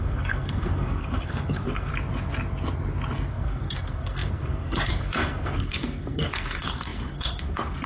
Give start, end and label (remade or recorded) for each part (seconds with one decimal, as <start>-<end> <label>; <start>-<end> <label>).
0.0-1.9 remade; 1.9-3.3 recorded; 3.3-7.9 remade